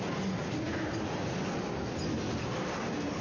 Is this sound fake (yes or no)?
no